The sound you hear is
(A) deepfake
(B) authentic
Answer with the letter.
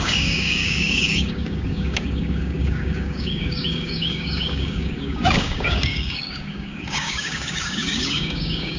A